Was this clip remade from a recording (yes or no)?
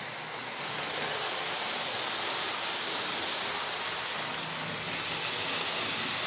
no